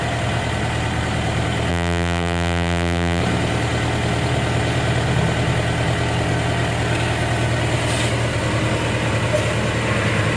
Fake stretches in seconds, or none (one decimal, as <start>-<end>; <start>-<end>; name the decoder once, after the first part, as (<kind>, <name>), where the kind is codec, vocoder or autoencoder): 1.7-3.2 (vocoder, BigVGAN v2)